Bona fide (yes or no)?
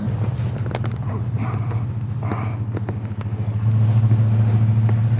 yes